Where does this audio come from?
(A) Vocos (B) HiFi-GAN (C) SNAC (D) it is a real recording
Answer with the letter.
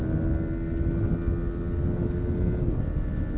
D